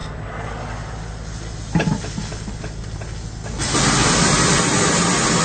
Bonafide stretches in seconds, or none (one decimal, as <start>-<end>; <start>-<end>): 0.0-5.4